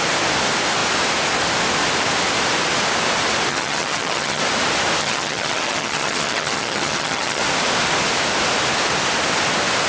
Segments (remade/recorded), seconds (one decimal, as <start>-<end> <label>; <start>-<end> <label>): 0.0-3.5 recorded; 3.5-4.4 remade; 4.4-5.0 recorded; 5.0-7.4 remade; 7.4-9.9 recorded